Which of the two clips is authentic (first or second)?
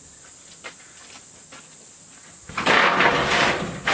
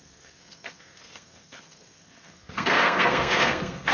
first